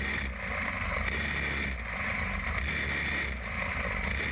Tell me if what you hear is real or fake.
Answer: real